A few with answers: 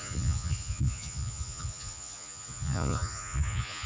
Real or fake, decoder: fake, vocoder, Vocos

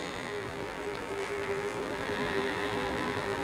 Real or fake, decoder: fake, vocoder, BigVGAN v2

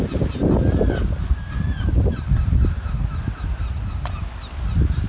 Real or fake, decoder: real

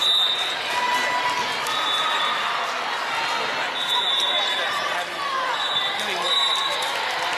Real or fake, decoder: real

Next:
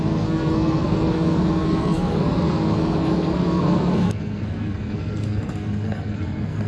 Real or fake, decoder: fake, codec, SNAC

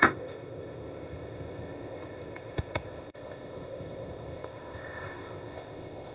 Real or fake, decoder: fake, codec, ZipCodec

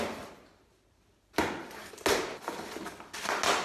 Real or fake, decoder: real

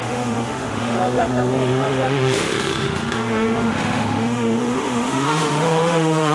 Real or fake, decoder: fake, autoencoder, DAC-VAE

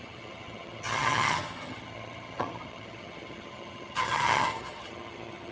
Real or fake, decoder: fake, vocoder, HiFi-GAN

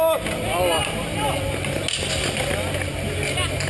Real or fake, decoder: real